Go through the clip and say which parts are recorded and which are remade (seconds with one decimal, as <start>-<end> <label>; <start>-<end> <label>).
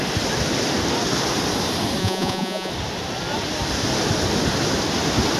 0.0-2.0 recorded; 2.0-2.7 remade; 2.7-5.4 recorded